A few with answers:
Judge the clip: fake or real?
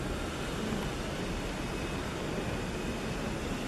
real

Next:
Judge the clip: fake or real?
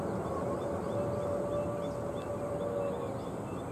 real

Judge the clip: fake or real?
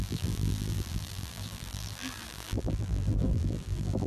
fake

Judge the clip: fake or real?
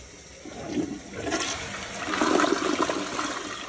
real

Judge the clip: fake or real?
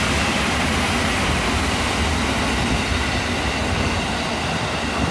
real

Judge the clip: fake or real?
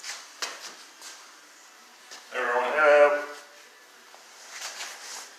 real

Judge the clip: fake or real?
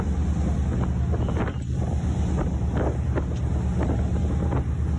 real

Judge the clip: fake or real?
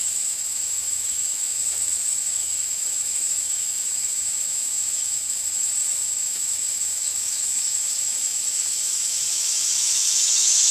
fake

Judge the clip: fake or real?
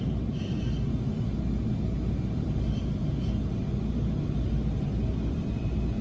real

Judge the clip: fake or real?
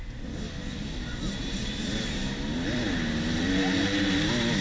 real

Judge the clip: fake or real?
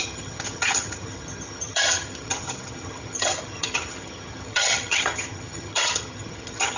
fake